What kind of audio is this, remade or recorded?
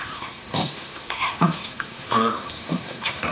remade